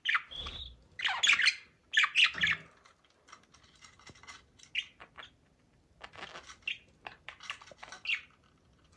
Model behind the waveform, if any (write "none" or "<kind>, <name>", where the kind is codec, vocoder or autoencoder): none